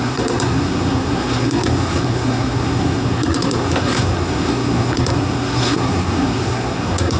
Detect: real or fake fake